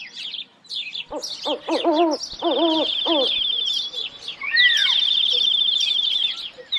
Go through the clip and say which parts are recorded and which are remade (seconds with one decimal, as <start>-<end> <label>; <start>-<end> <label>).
0.0-6.8 recorded